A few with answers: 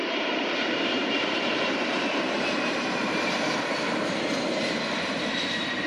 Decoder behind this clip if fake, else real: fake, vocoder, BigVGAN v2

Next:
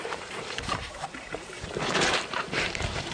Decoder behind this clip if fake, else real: fake, vocoder, BigVGAN v2